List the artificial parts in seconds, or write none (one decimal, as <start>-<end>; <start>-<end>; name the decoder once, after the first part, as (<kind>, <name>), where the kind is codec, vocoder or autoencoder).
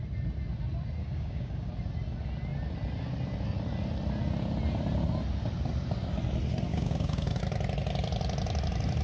1.0-1.7 (codec, DAC); 6.7-7.4